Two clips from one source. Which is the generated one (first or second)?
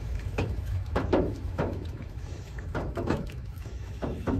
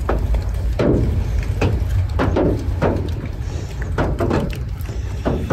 first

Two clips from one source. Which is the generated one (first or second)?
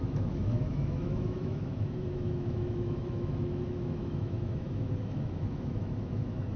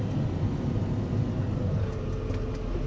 first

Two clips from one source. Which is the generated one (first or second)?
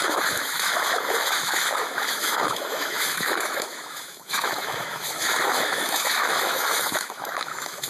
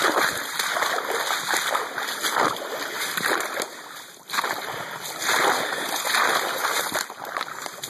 first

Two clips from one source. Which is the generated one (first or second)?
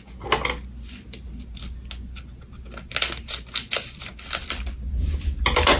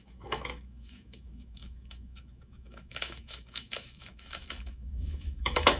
second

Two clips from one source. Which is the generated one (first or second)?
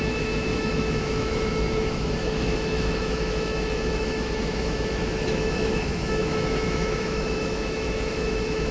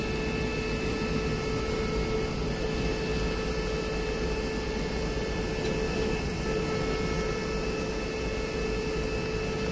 first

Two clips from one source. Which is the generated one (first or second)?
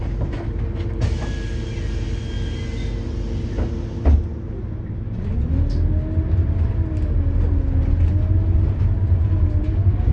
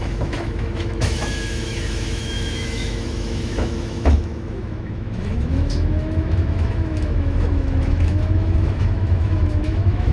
second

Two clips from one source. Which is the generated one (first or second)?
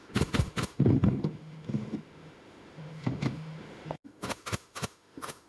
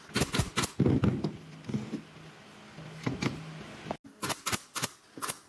first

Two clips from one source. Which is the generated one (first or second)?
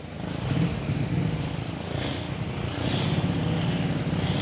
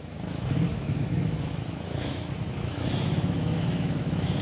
second